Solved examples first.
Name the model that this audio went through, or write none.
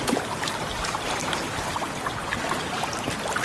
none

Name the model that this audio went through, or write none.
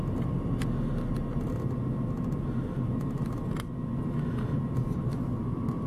none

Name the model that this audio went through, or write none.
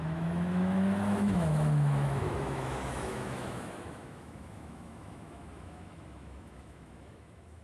autoencoder, DAC-VAE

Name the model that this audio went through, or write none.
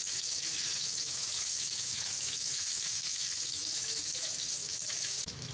autoencoder, DAC-VAE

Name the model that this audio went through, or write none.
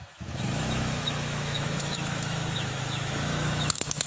autoencoder, DAC-VAE